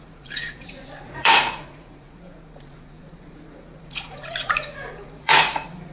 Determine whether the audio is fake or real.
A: fake